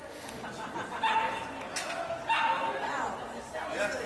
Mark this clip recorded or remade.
recorded